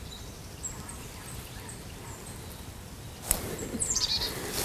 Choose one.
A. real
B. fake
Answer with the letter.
B